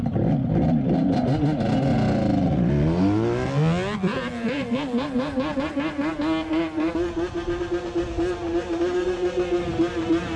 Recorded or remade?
recorded